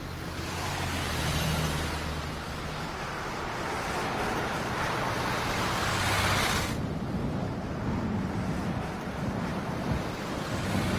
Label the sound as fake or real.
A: real